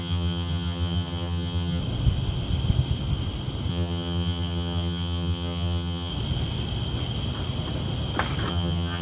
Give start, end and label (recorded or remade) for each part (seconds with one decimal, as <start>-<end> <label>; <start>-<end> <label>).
0.0-1.8 remade; 1.8-3.7 recorded; 3.7-6.1 remade; 6.1-8.5 recorded; 8.5-9.0 remade